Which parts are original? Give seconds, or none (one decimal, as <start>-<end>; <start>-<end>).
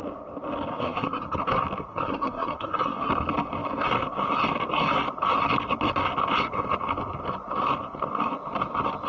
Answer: 0.0-0.7; 1.4-1.9; 3.1-9.1